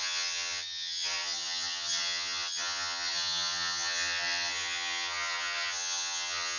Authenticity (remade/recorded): remade